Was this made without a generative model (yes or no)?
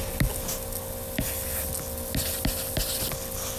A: yes